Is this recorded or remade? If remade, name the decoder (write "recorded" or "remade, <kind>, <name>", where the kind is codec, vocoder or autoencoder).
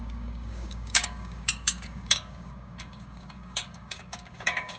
remade, codec, DAC